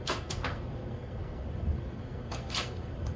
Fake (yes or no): yes